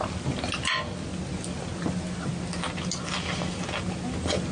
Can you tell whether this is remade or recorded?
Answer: recorded